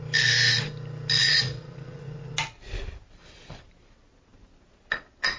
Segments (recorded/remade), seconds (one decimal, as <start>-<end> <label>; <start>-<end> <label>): 0.0-1.2 recorded; 1.2-2.3 remade; 2.3-5.4 recorded

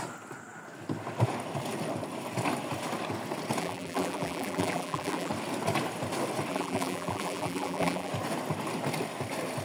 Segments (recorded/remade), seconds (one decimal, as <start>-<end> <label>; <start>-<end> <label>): 0.0-3.6 recorded; 3.6-5.3 remade; 5.3-6.5 recorded; 6.5-8.1 remade; 8.1-9.6 recorded

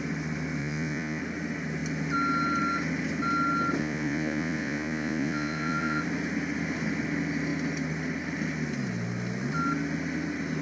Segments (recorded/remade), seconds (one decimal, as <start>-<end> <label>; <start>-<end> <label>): 0.0-0.6 recorded; 0.6-1.2 remade; 1.2-3.8 recorded; 3.8-6.0 remade; 6.0-10.6 recorded

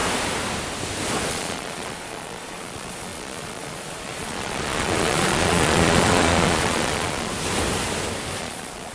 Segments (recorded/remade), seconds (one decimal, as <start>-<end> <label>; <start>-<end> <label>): 0.0-1.3 recorded; 1.3-7.3 remade; 7.3-8.4 recorded; 8.4-8.9 remade